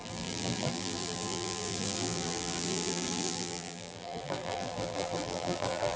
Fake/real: fake